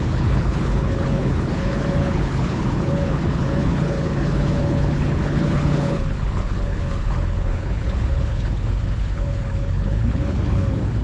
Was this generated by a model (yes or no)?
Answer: yes